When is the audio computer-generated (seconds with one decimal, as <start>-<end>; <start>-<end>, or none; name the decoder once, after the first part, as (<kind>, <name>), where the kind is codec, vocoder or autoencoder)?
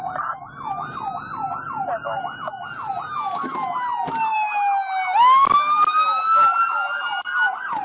none